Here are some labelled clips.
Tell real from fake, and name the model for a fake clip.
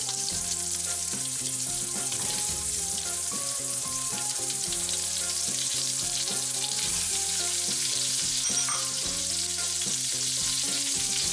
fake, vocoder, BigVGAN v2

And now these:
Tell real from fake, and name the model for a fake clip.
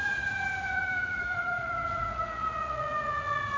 fake, vocoder, Vocos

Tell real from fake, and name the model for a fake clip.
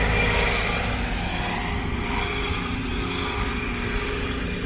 real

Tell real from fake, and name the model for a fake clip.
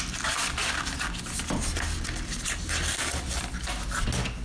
real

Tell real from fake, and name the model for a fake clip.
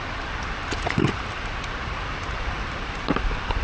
real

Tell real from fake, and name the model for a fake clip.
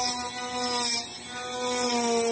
real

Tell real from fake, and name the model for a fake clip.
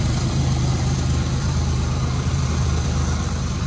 fake, vocoder, BigVGAN v2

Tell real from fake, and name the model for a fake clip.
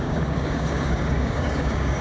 fake, codec, DAC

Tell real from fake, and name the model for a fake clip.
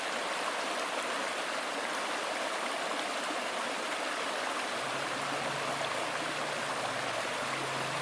real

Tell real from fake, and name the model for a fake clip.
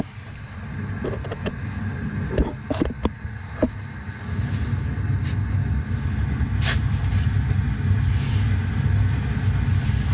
real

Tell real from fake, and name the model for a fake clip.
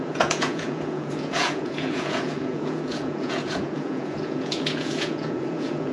fake, vocoder, Vocos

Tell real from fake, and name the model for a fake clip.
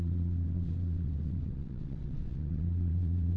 fake, vocoder, WaveNeXt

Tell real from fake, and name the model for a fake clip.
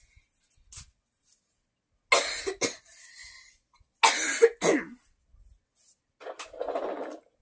real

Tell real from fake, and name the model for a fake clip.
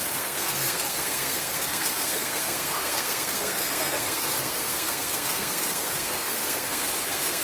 fake, codec, SNAC